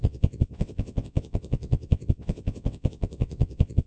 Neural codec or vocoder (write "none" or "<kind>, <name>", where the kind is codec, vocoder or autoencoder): vocoder, WaveNeXt